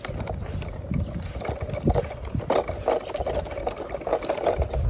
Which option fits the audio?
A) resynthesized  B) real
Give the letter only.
B